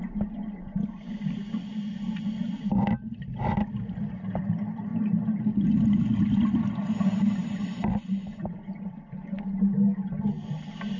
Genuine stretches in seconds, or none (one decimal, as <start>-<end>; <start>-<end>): 0.0-11.0